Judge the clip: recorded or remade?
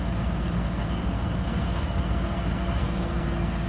remade